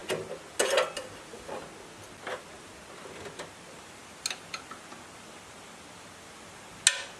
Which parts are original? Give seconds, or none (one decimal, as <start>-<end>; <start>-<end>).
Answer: 0.0-7.2